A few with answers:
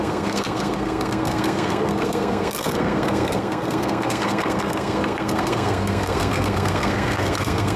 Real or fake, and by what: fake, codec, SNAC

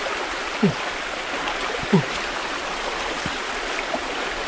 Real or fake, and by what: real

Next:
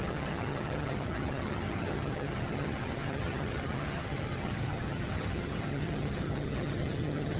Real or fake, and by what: fake, vocoder, HiFi-GAN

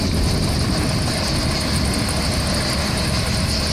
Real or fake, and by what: real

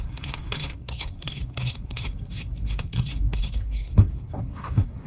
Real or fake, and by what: fake, codec, SNAC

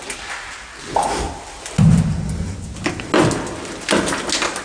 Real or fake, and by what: real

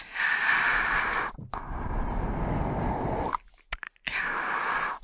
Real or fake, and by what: real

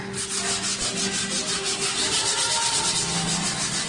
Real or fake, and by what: real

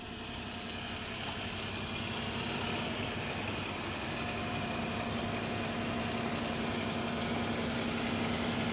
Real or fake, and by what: real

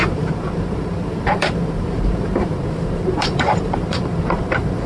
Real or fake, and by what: fake, vocoder, BigVGAN v2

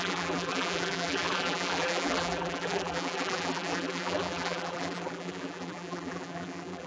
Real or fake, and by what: fake, vocoder, BigVGAN v2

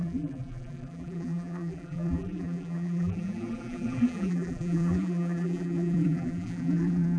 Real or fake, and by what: fake, vocoder, BigVGAN v2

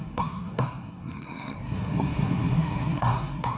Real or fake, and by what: fake, codec, SNAC